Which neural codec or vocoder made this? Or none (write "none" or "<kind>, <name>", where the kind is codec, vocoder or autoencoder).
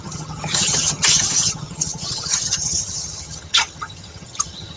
vocoder, HiFi-GAN